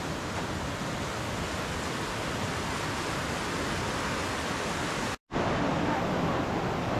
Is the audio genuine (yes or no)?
yes